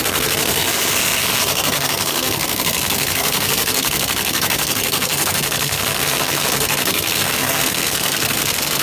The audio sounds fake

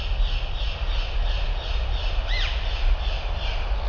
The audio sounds real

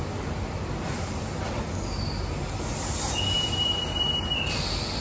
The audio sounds real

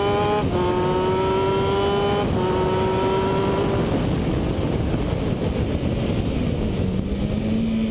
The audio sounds real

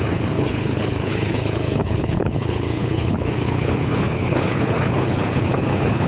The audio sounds fake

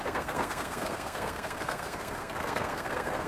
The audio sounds fake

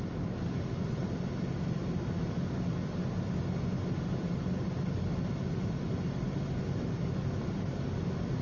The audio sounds real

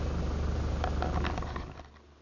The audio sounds real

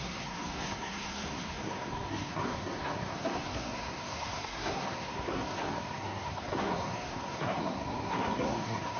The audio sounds fake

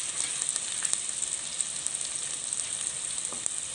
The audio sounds real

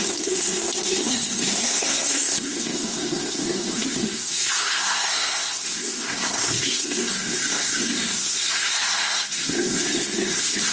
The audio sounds fake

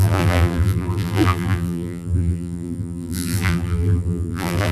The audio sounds fake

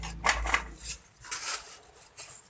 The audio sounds real